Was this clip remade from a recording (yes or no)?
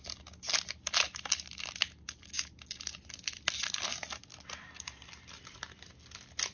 no